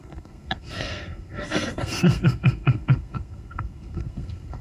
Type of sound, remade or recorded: remade